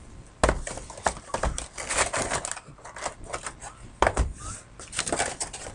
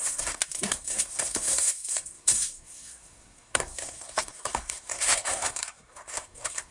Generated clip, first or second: second